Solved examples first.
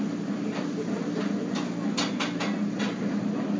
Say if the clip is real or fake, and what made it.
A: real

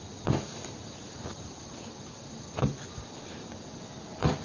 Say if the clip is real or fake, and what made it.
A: real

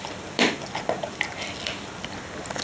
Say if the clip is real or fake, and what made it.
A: real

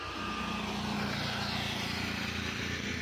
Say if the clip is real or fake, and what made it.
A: real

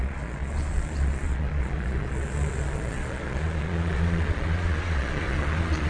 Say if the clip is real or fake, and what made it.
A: fake, vocoder, Vocos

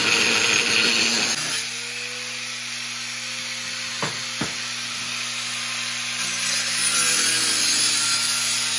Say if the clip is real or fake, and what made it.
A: real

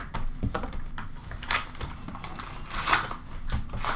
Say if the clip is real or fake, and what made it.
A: real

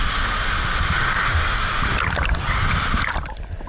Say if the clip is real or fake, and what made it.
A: real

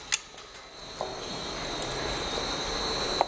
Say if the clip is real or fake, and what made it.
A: real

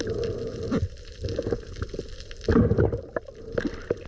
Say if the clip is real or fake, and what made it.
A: real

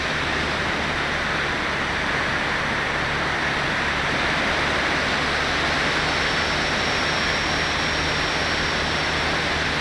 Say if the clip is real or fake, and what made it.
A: real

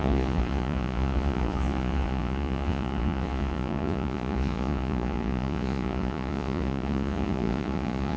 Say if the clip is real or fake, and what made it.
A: fake, vocoder, Vocos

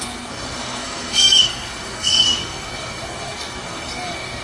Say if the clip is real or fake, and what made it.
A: fake, codec, SNAC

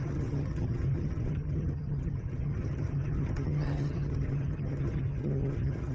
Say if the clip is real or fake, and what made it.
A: fake, vocoder, HiFi-GAN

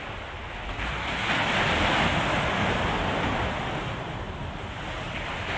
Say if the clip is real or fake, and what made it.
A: real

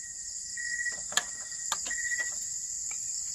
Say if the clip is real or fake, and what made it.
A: real